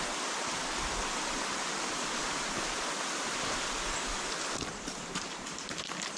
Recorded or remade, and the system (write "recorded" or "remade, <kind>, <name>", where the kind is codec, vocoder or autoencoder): remade, vocoder, BigVGAN v2